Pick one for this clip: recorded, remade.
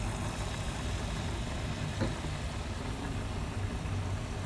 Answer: remade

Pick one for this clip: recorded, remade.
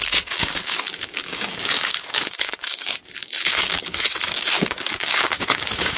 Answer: remade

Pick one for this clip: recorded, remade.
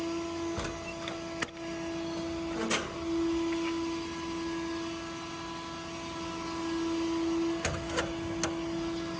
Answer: recorded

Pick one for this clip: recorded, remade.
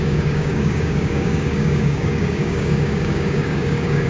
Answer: remade